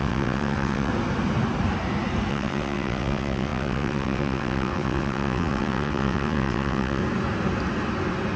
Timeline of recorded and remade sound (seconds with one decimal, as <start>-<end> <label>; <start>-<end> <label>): 0.0-0.9 remade; 0.9-2.3 recorded; 2.3-7.0 remade; 7.0-8.4 recorded